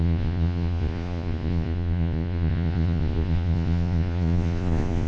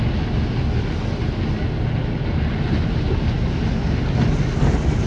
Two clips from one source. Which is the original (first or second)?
second